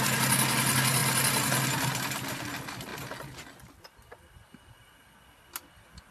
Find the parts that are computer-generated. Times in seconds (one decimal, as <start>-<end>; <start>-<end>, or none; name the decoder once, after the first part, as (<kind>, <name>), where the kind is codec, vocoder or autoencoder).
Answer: none